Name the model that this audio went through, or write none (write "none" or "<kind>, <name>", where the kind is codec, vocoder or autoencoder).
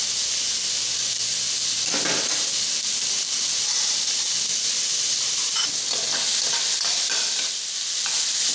none